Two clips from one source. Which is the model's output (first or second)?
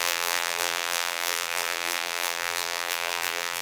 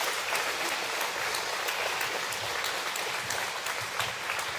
first